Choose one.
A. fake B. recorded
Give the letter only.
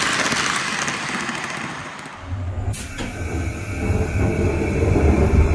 B